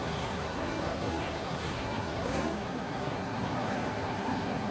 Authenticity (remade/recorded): remade